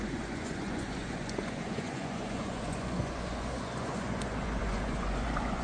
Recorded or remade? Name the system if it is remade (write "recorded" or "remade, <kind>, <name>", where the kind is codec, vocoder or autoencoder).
remade, vocoder, Vocos